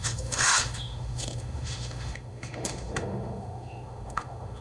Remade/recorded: remade